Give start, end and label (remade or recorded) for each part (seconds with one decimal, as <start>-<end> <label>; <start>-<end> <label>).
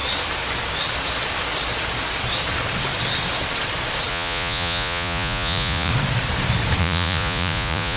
0.0-4.1 recorded; 4.1-5.9 remade; 5.9-6.8 recorded; 6.8-8.0 remade